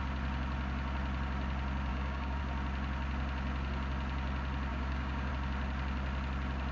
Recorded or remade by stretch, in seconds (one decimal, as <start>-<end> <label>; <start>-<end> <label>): 0.0-1.9 recorded; 1.9-2.4 remade; 2.4-4.7 recorded; 4.7-5.3 remade; 5.3-6.7 recorded